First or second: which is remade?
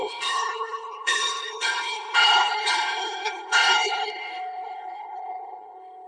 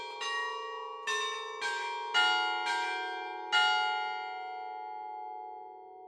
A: first